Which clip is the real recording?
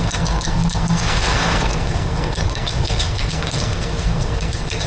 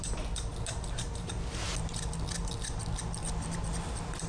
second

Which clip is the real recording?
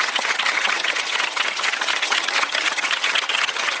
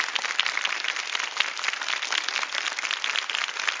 second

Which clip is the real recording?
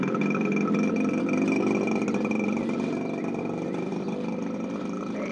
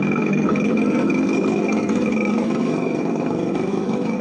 first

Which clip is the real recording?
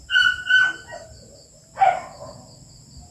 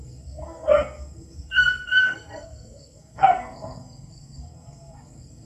first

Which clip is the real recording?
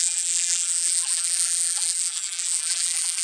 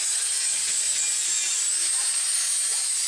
second